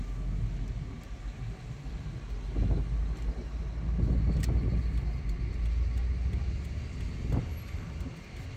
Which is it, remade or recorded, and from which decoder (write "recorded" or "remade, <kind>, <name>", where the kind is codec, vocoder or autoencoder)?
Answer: recorded